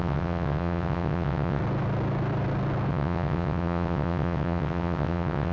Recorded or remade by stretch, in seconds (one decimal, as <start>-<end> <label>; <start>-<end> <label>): 0.0-1.6 remade; 1.6-2.9 recorded; 2.9-5.5 remade

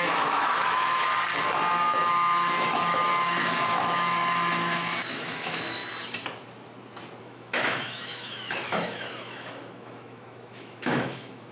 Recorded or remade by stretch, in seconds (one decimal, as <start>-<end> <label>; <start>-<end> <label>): 0.0-1.1 remade; 1.1-2.1 recorded; 2.1-5.8 remade; 5.8-7.2 recorded; 7.2-11.5 remade

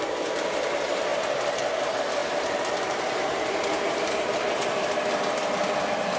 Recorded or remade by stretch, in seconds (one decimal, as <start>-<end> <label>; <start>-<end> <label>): 0.0-2.2 recorded; 2.2-4.9 remade; 4.9-6.2 recorded

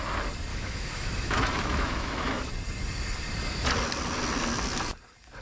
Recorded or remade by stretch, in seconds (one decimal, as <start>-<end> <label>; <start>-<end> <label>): 0.0-0.5 recorded; 0.5-2.5 remade; 2.5-5.4 recorded

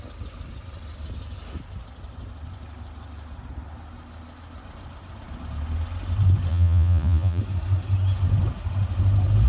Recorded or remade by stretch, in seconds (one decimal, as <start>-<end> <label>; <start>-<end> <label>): 0.0-6.5 recorded; 6.5-7.4 remade; 7.4-9.5 recorded

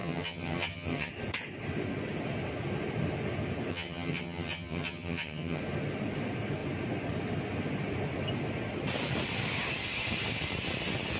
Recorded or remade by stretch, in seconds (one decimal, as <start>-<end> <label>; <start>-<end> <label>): 0.0-1.1 remade; 1.1-3.7 recorded; 3.7-5.6 remade; 5.6-11.2 recorded

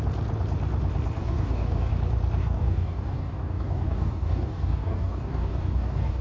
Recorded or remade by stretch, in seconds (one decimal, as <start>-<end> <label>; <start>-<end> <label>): 0.0-1.2 recorded; 1.2-1.9 remade; 1.9-2.4 recorded; 2.4-6.2 remade

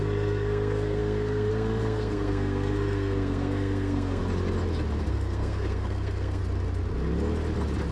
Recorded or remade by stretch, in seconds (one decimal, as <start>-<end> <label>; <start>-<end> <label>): 0.0-4.2 remade; 4.2-5.0 recorded; 5.0-6.4 remade; 6.4-7.9 recorded